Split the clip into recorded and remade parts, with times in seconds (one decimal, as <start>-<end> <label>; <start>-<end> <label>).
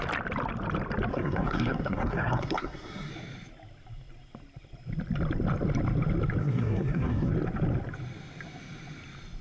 0.0-1.1 recorded; 1.1-3.1 remade; 3.1-6.4 recorded; 6.4-7.3 remade; 7.3-9.4 recorded